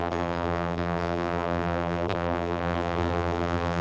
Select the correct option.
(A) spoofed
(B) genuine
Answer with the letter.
A